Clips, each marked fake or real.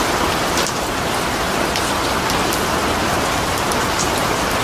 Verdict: real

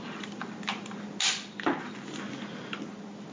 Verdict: real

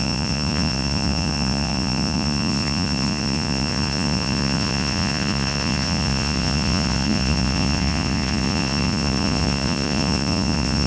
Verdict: fake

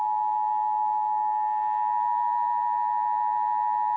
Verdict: real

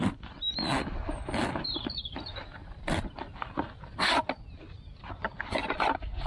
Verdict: real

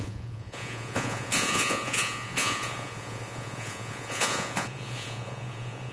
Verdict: fake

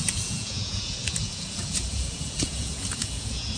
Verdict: fake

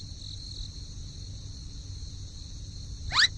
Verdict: real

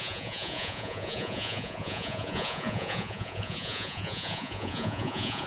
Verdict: fake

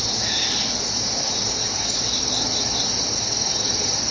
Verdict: real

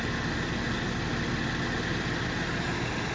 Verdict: real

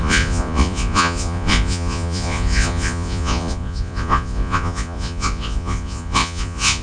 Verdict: fake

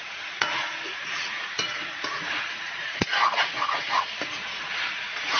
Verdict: fake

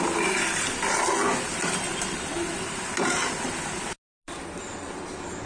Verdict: real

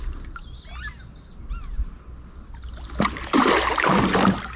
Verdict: real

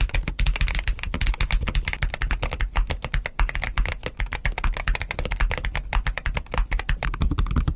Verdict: real